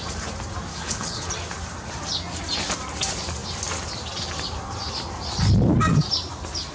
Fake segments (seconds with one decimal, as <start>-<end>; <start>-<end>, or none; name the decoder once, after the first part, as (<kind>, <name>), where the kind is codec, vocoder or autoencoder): 0.7-1.3 (codec, HILCodec)